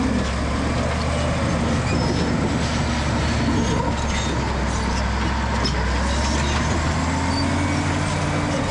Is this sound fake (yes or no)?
no